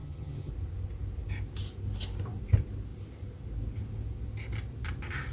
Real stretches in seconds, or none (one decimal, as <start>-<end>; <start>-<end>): 0.5-5.3